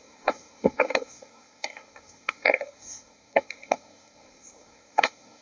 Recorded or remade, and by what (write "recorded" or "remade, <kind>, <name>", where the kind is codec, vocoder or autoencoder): remade, codec, SNAC